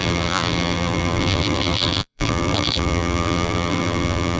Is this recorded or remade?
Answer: remade